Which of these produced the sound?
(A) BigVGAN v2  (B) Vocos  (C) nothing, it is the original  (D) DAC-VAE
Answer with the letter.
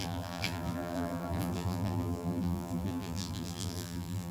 A